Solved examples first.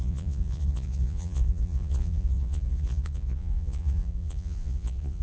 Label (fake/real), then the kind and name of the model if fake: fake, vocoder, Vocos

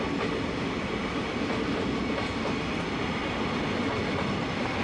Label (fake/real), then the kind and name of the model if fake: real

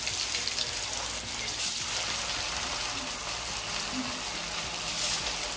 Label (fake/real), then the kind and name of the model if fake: real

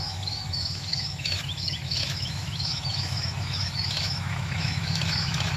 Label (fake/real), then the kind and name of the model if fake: fake, autoencoder, DAC-VAE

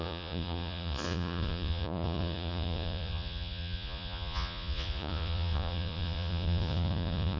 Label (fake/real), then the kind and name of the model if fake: fake, vocoder, Vocos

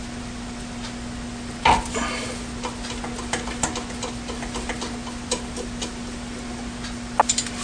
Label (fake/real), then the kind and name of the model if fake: real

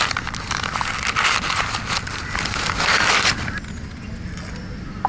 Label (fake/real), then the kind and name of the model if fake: real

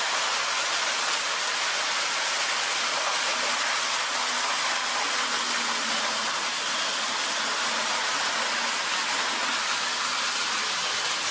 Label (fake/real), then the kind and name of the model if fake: real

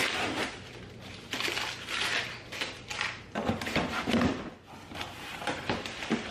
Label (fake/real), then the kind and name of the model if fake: real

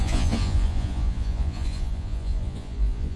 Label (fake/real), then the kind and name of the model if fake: fake, vocoder, Vocos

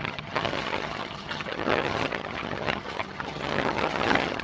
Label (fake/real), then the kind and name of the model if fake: fake, vocoder, HiFi-GAN